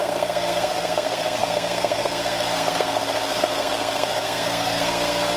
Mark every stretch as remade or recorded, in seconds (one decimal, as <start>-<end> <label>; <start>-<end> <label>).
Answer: 0.0-5.4 remade